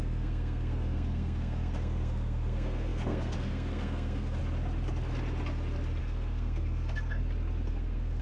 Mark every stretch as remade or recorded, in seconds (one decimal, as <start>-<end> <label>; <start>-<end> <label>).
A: 0.0-4.4 remade; 4.4-6.0 recorded; 6.0-7.2 remade; 7.2-7.7 recorded; 7.7-8.2 remade